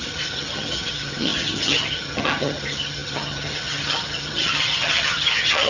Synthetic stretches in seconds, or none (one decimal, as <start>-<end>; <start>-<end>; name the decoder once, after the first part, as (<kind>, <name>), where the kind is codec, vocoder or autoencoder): 0.0-5.7 (vocoder, HiFi-GAN)